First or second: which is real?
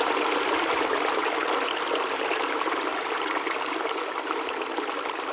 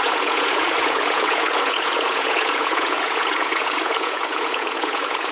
first